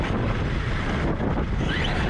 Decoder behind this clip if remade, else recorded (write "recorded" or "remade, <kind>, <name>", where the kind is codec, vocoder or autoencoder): recorded